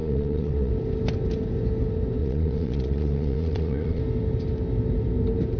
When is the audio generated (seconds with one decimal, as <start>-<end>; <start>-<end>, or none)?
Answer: 0.0-0.7; 2.2-4.0